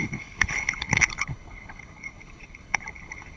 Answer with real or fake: fake